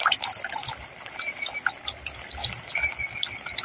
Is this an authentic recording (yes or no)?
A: yes